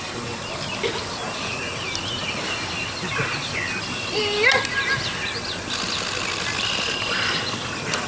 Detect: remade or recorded recorded